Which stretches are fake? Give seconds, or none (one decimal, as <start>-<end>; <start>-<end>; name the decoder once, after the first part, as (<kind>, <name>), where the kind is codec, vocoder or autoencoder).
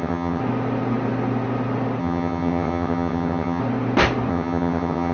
0.0-0.4 (vocoder, HiFi-GAN); 2.0-3.6; 4.3-5.1